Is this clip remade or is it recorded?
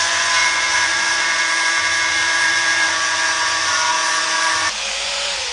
remade